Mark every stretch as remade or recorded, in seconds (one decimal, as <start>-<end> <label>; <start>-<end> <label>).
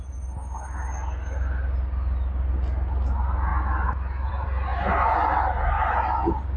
0.0-6.6 recorded